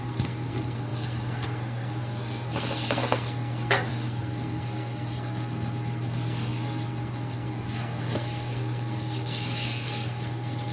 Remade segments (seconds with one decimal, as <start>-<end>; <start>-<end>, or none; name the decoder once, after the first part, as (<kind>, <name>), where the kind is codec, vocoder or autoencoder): 0.0-10.7 (codec, SNAC)